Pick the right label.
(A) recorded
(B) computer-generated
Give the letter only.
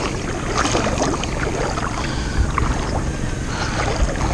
A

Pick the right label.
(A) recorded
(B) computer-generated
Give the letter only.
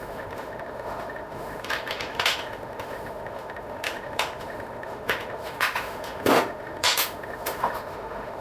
B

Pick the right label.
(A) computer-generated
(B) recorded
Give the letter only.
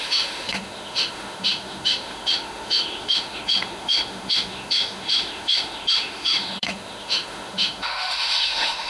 A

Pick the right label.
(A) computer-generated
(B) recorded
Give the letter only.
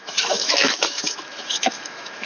A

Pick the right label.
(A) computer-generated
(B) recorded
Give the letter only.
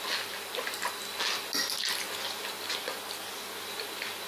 B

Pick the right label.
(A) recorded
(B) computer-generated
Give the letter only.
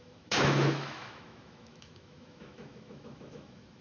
B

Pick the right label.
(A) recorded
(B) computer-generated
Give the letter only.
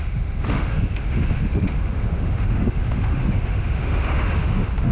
B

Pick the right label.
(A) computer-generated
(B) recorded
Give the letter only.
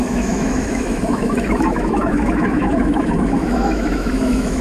A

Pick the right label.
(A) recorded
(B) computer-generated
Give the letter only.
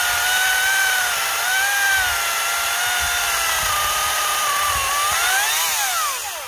A